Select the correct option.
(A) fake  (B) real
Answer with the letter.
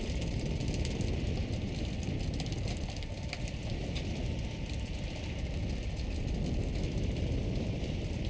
B